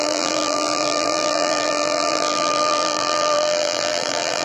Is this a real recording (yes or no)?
no